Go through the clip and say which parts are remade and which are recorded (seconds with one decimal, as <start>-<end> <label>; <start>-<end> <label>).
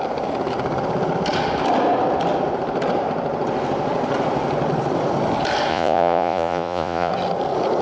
0.0-5.7 recorded; 5.7-7.1 remade; 7.1-7.8 recorded